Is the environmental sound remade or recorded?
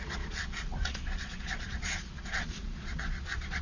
remade